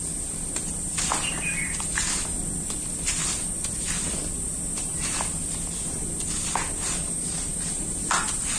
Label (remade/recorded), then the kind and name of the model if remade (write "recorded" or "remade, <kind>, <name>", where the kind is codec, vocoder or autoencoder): recorded